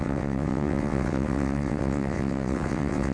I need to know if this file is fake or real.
fake